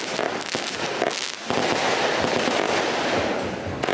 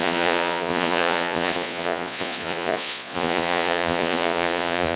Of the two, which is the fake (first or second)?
second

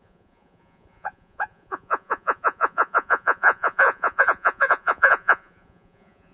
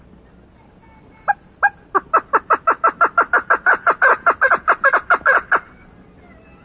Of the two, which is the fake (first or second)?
first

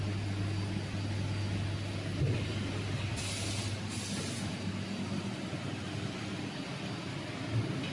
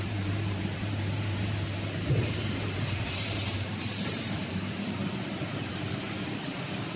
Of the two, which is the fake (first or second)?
second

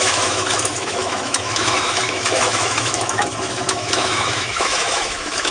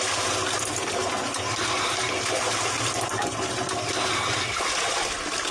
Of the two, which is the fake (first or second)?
first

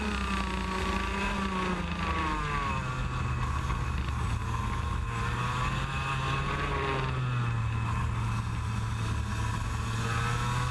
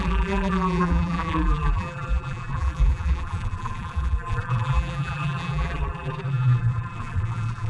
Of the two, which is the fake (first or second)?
second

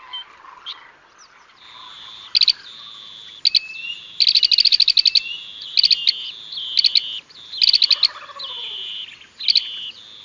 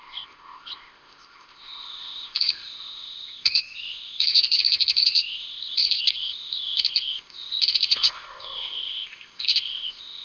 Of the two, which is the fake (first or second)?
second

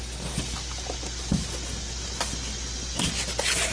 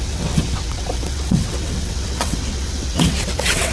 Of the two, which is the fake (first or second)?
second